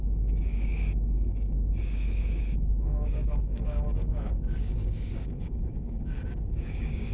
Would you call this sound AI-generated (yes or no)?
yes